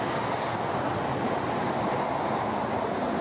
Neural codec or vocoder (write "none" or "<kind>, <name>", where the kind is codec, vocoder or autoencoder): none